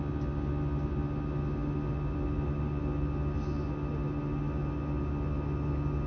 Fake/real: real